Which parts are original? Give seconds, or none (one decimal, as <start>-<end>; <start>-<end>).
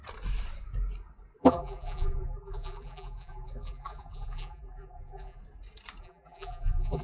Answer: 0.0-1.4; 5.4-6.0